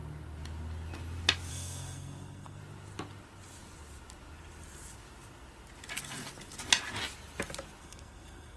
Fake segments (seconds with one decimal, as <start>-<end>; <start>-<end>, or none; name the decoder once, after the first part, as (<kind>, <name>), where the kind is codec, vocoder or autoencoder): 1.5-2.6 (codec, SNAC); 7.8-8.6